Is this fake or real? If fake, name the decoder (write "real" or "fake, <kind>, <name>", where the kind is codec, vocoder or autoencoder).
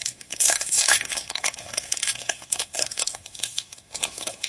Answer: fake, codec, SNAC